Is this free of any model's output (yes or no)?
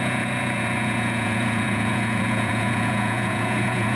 no